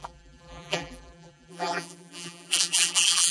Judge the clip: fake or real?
fake